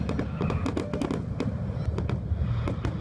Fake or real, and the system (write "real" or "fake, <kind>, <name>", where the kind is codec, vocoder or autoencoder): real